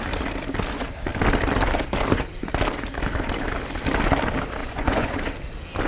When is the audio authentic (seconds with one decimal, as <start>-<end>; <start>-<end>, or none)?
0.0-4.6; 5.2-5.9